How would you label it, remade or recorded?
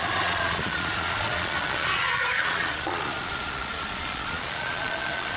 remade